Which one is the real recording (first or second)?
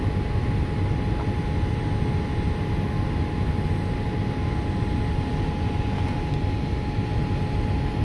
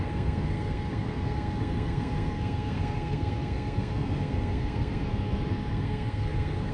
first